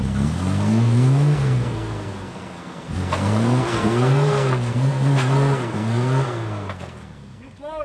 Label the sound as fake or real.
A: fake